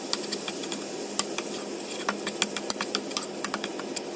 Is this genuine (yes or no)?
yes